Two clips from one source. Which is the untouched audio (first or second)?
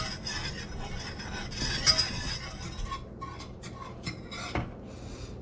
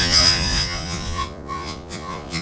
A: first